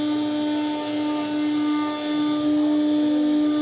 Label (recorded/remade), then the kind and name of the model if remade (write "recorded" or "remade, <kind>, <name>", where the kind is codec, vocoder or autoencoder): recorded